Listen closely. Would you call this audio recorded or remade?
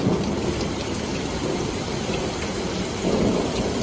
remade